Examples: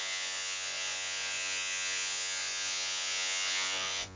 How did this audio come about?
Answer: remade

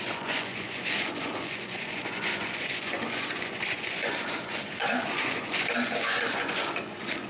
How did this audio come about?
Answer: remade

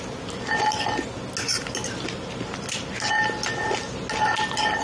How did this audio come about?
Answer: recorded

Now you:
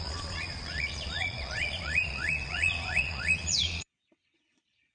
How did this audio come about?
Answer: remade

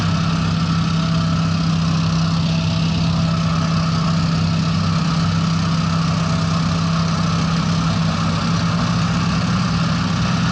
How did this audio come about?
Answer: recorded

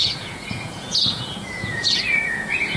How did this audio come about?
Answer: remade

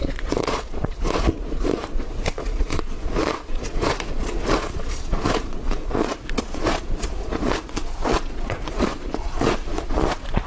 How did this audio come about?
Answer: remade